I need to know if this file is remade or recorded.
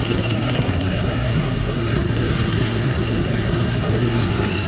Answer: remade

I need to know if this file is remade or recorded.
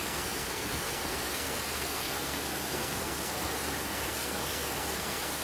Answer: remade